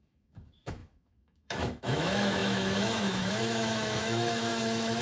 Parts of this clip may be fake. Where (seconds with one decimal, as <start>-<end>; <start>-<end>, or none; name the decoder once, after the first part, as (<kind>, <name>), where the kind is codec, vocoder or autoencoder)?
0.0-5.0 (autoencoder, DAC-VAE)